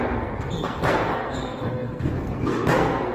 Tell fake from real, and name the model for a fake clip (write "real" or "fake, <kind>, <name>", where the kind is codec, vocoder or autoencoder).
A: fake, codec, SNAC